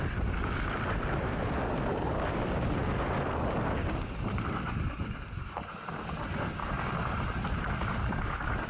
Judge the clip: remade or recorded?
recorded